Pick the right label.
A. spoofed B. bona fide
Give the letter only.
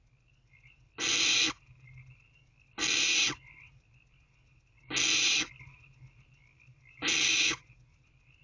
B